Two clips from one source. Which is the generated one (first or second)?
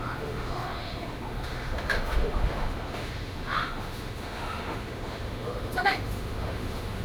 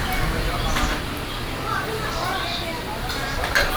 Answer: first